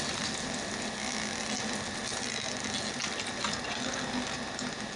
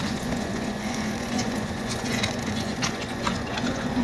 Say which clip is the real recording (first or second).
first